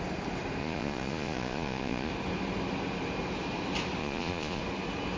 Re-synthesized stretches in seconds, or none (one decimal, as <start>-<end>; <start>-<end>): 0.6-2.1; 4.0-4.6